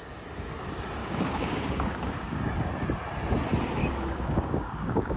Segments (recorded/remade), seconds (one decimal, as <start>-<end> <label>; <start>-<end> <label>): 0.0-1.0 recorded; 1.0-2.4 remade; 2.4-3.8 recorded; 3.8-5.2 remade